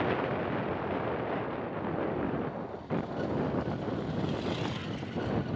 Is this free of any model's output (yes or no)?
yes